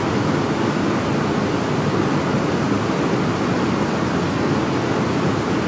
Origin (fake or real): real